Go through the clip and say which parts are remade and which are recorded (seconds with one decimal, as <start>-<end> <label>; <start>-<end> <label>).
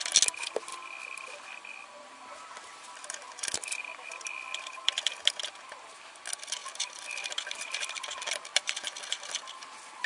0.0-0.7 recorded; 0.7-5.1 remade; 5.1-6.6 recorded; 6.6-7.9 remade; 7.9-8.5 recorded; 8.5-9.5 remade; 9.5-10.1 recorded